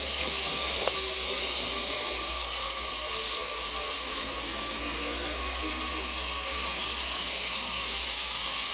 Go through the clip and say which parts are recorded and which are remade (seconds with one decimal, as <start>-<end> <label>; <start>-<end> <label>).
0.0-8.7 remade